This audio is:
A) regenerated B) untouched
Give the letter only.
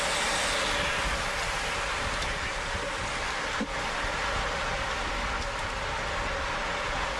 B